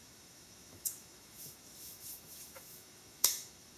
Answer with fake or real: fake